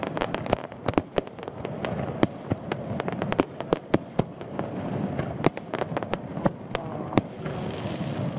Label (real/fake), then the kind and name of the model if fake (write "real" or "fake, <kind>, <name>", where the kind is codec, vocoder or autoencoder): real